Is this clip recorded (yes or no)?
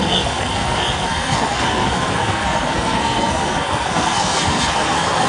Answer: no